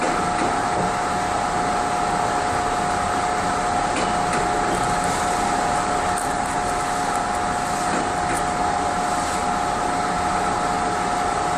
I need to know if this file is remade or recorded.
recorded